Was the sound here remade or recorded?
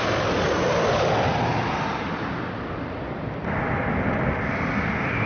remade